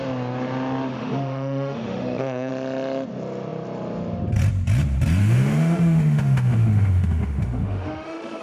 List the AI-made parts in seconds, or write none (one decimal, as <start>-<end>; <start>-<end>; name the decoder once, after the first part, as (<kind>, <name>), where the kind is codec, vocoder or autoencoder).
0.9-2.5 (autoencoder, DAC-VAE); 5.2-8.4